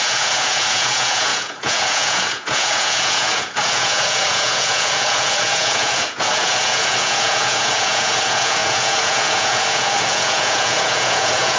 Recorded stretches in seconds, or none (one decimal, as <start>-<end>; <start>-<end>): none